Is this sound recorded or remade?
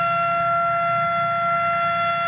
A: recorded